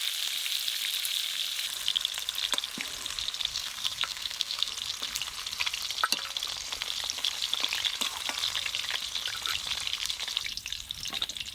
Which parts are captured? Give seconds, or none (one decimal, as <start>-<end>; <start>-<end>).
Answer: 0.0-3.5; 4.7-11.5